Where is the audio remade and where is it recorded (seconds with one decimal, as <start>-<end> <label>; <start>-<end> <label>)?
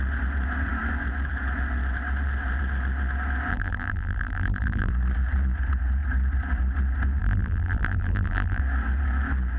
0.0-3.5 recorded; 3.5-4.9 remade; 4.9-7.2 recorded; 7.2-8.6 remade; 8.6-9.6 recorded